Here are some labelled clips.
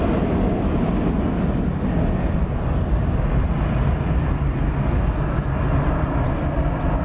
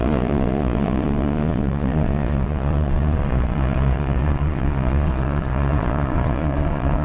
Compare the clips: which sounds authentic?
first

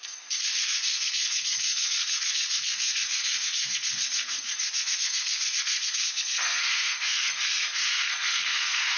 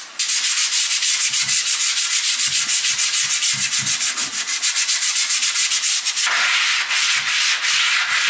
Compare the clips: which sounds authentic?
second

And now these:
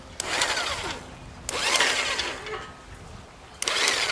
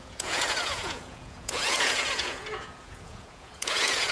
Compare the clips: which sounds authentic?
first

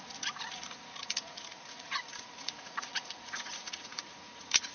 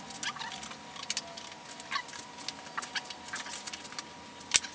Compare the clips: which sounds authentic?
second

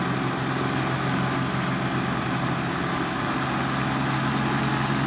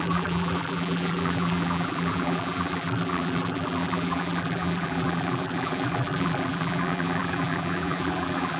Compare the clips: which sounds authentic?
first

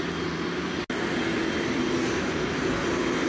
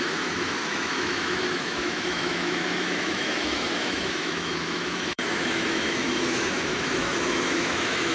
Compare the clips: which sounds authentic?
first